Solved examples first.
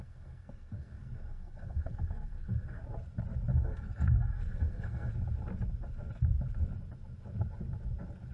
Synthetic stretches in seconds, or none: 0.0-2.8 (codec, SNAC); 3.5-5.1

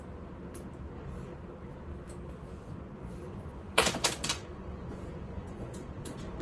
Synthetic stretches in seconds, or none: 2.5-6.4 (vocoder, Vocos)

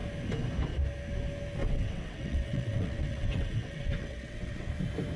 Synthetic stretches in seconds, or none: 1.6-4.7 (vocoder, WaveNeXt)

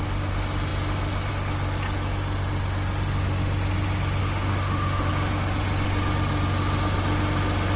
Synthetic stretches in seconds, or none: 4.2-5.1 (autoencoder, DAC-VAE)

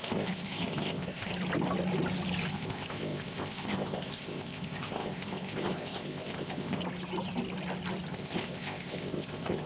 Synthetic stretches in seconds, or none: 0.0-1.3 (codec, ZipCodec); 2.5-6.8; 8.1-9.7

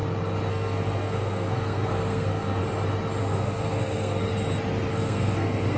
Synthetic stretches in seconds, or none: 0.5-2.6 (codec, SNAC); 3.2-4.3; 4.9-5.8

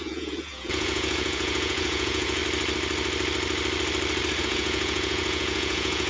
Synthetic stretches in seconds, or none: 0.0-2.4 (vocoder, Vocos); 4.4-6.1

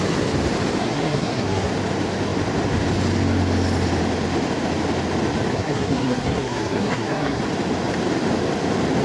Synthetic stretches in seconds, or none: 0.8-1.7 (codec, SNAC); 5.5-7.4